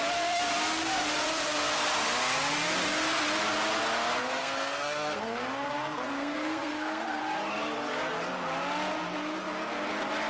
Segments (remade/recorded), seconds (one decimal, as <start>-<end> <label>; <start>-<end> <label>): 0.0-4.2 recorded; 4.2-7.2 remade; 7.2-10.3 recorded